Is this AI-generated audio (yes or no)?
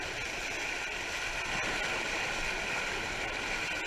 no